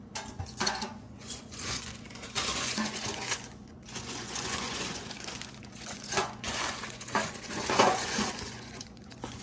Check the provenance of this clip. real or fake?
fake